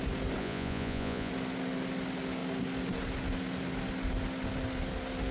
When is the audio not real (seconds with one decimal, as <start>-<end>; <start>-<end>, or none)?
0.4-1.3

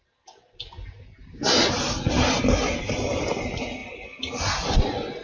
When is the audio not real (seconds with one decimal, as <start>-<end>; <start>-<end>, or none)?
none

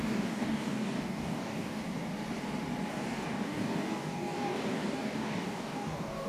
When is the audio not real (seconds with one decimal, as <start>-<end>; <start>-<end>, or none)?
0.0-1.8; 2.9-6.3

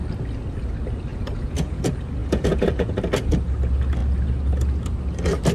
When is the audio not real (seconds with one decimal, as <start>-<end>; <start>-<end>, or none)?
1.1-1.8; 2.2-2.9

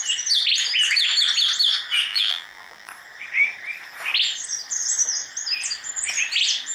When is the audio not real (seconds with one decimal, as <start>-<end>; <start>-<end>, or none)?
2.1-2.9

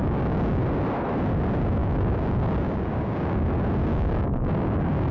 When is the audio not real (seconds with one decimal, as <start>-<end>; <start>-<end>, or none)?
0.0-0.6; 1.8-3.4; 3.9-5.1

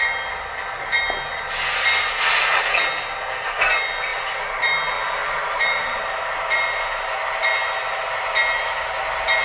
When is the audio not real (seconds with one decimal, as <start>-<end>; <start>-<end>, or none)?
4.1-4.6; 5.2-6.1